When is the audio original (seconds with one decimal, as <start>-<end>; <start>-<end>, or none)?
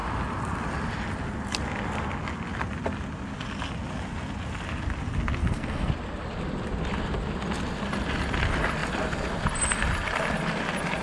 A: 0.0-5.4; 5.9-11.0